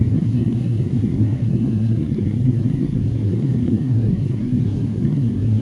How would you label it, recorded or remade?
remade